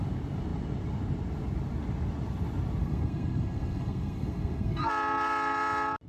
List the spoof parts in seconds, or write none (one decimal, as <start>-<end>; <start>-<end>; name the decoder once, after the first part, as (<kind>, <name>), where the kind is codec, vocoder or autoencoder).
2.8-4.8 (codec, SNAC)